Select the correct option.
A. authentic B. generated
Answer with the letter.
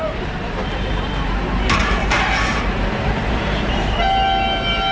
B